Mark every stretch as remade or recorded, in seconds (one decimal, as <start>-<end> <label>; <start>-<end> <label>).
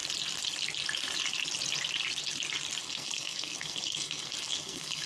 0.0-2.8 recorded; 2.8-5.1 remade